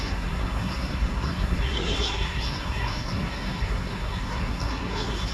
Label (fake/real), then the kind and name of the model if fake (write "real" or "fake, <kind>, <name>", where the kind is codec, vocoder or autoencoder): fake, codec, SNAC